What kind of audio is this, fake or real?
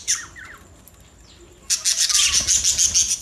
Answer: real